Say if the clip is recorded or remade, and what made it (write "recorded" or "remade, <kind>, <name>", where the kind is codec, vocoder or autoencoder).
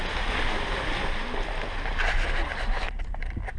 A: recorded